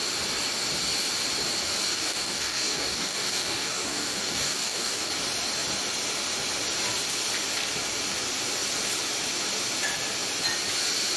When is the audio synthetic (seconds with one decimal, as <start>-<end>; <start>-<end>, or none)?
1.9-5.1